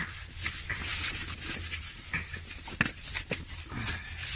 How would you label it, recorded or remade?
recorded